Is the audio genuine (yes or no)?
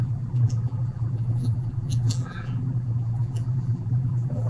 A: no